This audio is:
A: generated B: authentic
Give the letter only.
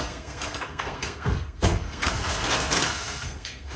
A